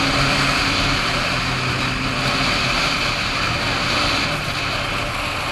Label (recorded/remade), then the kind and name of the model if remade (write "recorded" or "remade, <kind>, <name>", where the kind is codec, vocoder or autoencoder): recorded